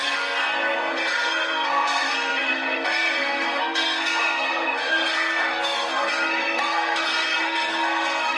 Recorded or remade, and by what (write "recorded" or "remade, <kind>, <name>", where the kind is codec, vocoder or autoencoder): remade, codec, SNAC